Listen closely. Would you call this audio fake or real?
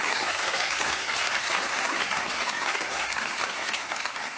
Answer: fake